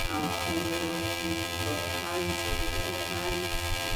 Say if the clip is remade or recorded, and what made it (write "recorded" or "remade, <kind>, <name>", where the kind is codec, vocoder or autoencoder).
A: remade, vocoder, BigVGAN v2